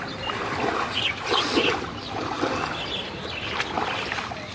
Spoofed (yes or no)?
no